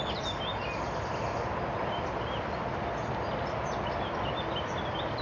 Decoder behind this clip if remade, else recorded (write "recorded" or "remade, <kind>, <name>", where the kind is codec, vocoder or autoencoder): recorded